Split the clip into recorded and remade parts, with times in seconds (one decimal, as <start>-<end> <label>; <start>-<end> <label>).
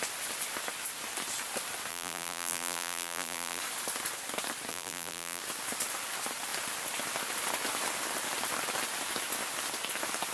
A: 0.0-1.9 recorded; 1.9-3.6 remade; 3.6-4.7 recorded; 4.7-5.4 remade; 5.4-10.3 recorded